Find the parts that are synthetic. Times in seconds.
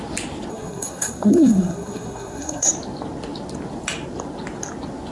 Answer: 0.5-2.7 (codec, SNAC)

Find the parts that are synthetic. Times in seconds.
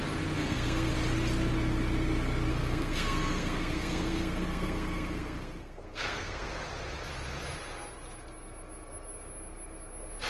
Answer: 0.4-0.9 (codec, SNAC); 2.5-6.5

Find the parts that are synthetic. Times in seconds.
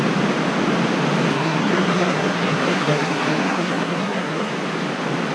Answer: 1.3-4.5 (codec, SNAC)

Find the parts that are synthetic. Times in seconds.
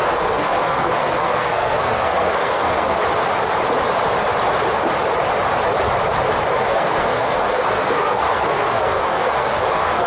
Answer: 0.0-3.0 (codec, SNAC); 6.6-10.1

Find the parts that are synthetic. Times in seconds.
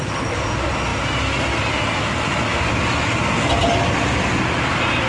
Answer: none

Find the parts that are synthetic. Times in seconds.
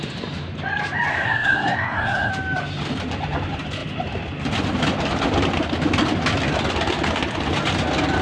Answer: 1.1-2.3 (codec, SNAC)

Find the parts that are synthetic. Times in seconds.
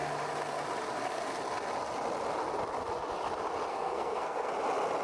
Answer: 3.7-4.5 (codec, SNAC)